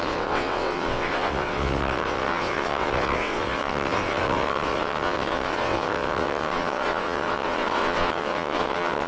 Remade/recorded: remade